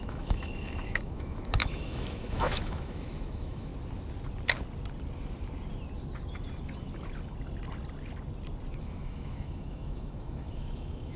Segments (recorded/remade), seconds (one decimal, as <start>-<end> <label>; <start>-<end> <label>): 0.0-3.7 remade; 3.7-8.8 recorded; 8.8-11.2 remade